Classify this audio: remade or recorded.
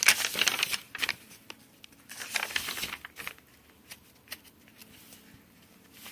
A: recorded